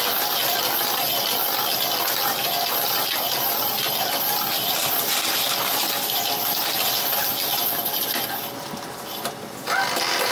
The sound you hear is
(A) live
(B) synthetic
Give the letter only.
A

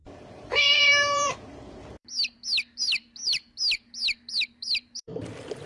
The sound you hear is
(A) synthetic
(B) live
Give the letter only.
A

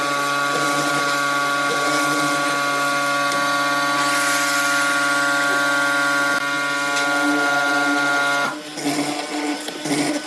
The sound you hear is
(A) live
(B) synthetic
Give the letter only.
A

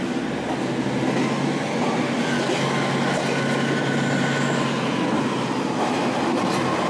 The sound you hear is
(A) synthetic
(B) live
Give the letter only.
B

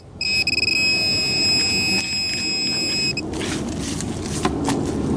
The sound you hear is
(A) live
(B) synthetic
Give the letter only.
A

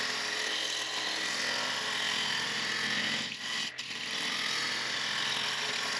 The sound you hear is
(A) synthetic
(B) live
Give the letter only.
B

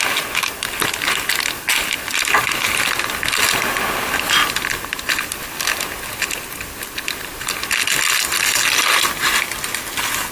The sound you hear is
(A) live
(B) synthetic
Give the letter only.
A